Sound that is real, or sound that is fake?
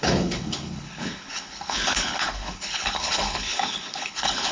fake